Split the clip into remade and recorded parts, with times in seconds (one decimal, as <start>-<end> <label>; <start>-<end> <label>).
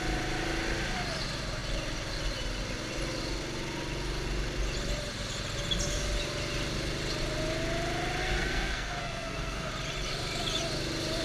0.0-8.2 recorded; 8.2-9.7 remade; 9.7-11.2 recorded